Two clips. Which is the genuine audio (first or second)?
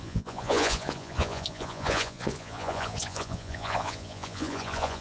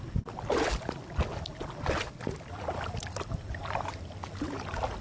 second